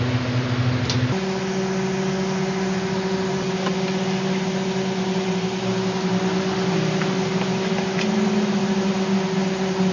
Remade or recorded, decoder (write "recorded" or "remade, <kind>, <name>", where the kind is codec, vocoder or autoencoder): recorded